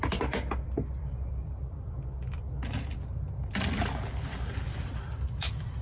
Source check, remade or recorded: remade